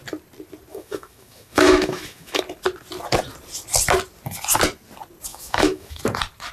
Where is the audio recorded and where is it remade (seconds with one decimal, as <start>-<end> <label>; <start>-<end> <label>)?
0.0-0.7 recorded; 0.7-2.4 remade; 2.4-5.3 recorded; 5.3-6.0 remade; 6.0-6.5 recorded